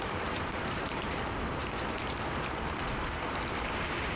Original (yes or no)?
no